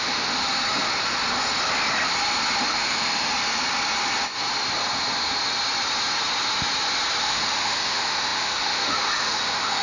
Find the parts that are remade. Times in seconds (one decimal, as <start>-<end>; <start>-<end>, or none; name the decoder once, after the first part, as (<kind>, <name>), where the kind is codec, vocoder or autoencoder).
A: 0.0-0.4 (autoencoder, DAC-VAE); 2.6-3.3; 7.2-9.8